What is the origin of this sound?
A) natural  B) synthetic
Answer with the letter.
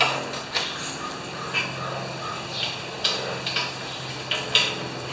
A